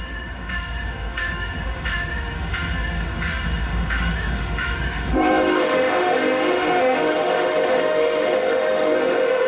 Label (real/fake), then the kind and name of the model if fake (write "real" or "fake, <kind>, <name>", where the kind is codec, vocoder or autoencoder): fake, autoencoder, DAC-VAE